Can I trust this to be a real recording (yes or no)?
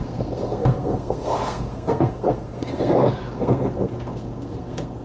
no